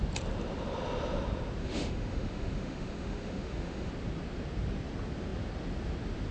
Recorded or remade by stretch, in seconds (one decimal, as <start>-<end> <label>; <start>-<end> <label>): 0.0-1.6 recorded; 1.6-3.9 remade; 3.9-6.3 recorded